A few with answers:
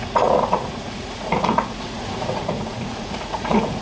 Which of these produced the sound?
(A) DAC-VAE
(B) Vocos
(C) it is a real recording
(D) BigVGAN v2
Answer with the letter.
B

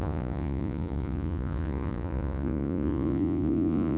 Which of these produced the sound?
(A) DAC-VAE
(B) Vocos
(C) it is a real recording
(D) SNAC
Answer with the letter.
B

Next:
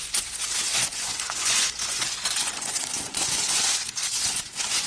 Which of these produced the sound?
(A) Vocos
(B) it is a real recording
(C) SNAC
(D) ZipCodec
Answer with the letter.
A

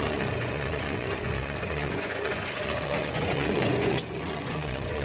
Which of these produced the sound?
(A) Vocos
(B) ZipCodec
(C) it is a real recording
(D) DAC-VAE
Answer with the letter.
A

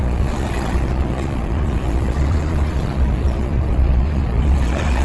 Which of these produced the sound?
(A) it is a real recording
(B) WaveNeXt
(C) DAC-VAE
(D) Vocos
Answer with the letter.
D